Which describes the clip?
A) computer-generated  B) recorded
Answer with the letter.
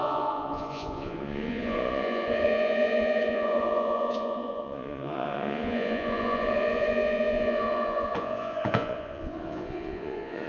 A